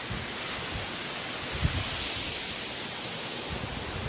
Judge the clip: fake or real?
real